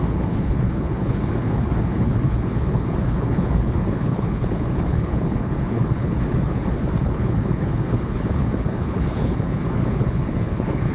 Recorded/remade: remade